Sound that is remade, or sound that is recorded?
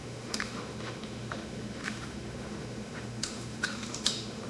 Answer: remade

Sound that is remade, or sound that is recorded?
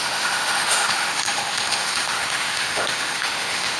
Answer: remade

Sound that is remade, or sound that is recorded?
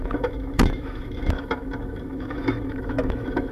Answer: remade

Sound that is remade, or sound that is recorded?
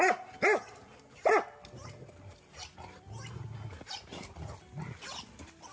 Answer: recorded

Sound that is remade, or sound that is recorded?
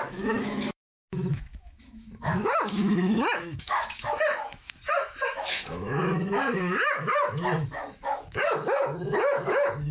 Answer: remade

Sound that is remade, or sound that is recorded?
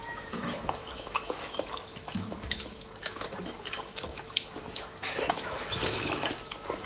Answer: remade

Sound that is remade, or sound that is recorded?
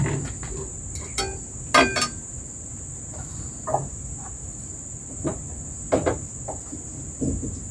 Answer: recorded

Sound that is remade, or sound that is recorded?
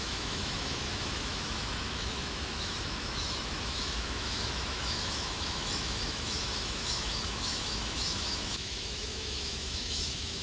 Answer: remade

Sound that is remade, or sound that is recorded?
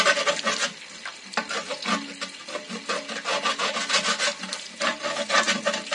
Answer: recorded